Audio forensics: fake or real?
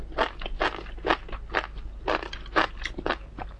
real